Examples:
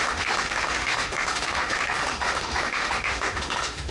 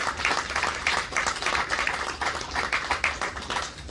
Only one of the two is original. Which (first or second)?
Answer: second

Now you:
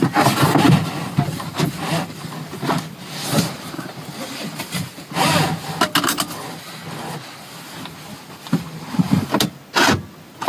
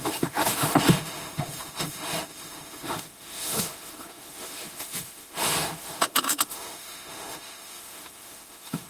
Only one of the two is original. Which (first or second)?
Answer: first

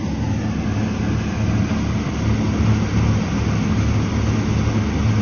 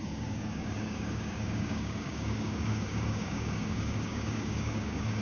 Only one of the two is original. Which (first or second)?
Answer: first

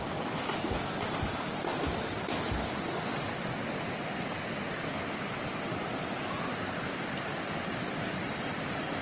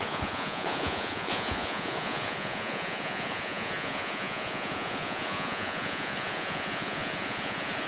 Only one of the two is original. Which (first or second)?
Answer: first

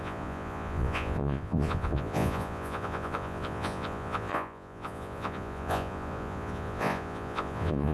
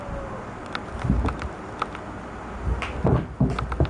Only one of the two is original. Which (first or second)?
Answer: second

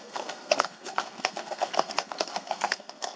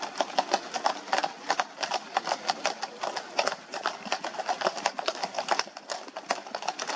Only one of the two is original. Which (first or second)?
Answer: second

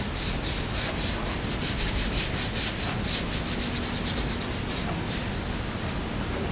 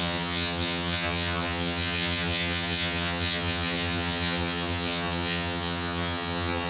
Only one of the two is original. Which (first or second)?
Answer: first